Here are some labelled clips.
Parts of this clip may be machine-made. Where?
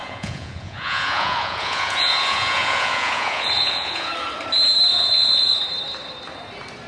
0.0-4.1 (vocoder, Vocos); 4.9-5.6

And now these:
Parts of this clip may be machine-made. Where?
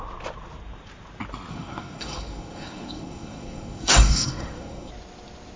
1.5-4.9 (codec, SNAC)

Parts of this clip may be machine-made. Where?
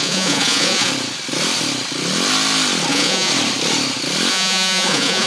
0.0-0.9 (vocoder, Vocos); 2.9-3.3; 4.3-5.3